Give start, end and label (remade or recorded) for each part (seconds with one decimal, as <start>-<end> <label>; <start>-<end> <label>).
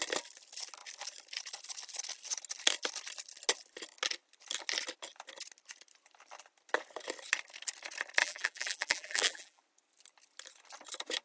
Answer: 0.0-8.2 recorded; 8.2-9.6 remade; 9.6-11.2 recorded